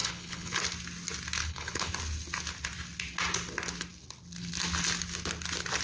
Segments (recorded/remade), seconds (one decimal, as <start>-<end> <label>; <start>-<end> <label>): 0.0-0.6 remade; 0.6-1.4 recorded; 1.4-1.9 remade; 1.9-5.8 recorded